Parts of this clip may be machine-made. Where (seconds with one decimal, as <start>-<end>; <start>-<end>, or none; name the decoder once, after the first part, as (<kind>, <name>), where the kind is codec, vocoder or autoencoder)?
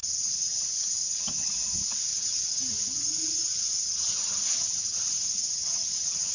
0.0-1.5 (vocoder, HiFi-GAN); 2.1-6.3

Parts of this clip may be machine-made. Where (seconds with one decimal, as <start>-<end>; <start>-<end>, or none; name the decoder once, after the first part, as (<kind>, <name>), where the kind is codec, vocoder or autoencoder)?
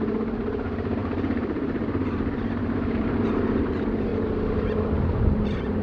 0.0-4.1 (vocoder, BigVGAN v2); 4.8-5.8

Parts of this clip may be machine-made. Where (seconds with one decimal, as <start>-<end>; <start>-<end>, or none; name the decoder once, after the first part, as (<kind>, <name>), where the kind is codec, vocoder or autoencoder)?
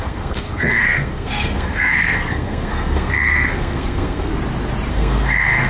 0.0-4.3 (codec, SNAC); 4.9-5.7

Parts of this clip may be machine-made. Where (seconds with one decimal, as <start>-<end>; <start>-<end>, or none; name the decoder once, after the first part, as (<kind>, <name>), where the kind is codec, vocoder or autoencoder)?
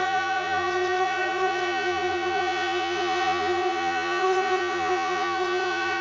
0.0-6.0 (vocoder, Vocos)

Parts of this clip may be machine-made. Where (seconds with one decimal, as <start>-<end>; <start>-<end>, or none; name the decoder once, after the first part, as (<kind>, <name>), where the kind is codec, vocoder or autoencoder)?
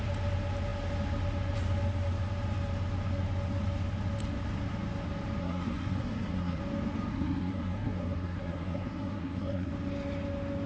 5.4-6.6 (codec, SNAC); 7.1-9.7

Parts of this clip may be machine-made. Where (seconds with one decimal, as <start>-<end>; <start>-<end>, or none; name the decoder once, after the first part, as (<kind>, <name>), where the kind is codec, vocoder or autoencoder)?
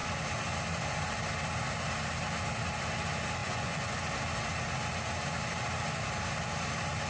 3.4-4.0 (vocoder, Vocos)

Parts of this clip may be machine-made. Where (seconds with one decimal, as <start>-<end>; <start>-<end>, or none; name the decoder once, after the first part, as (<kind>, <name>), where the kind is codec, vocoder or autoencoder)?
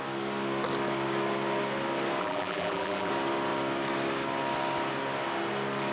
2.2-3.1 (vocoder, BigVGAN v2)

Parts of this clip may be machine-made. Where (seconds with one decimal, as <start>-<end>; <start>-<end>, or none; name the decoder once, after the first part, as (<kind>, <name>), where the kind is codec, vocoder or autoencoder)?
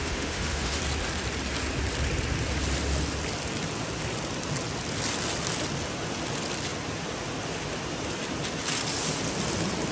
0.0-0.8 (autoencoder, DAC-VAE)